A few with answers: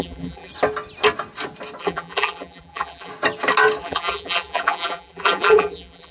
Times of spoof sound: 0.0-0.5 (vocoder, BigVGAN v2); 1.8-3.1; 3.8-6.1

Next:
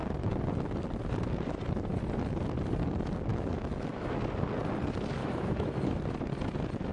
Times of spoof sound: 3.3-4.2 (autoencoder, DAC-VAE); 5.2-6.0

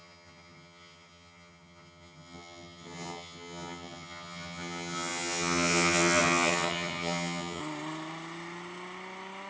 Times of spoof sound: 0.0-7.6 (vocoder, HiFi-GAN)

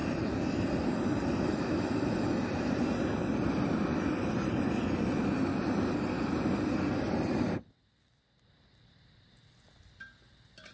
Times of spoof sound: none

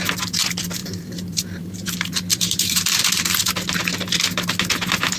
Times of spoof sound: 0.8-3.5 (vocoder, BigVGAN v2)

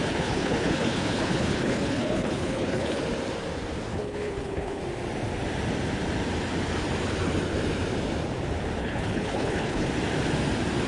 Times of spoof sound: 0.0-3.0 (codec, HILCodec); 3.9-4.8; 8.8-9.9

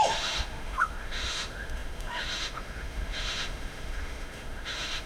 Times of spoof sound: 0.0-5.1 (autoencoder, DAC-VAE)

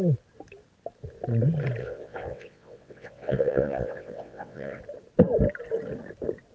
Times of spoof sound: 1.8-4.8 (vocoder, WaveNeXt)